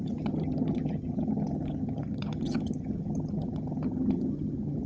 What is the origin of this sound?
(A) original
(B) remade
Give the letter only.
B